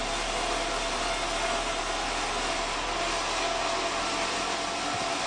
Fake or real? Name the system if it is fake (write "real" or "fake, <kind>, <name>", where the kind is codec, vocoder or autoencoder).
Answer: real